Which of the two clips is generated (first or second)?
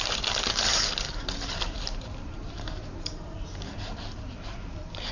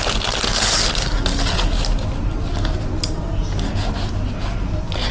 first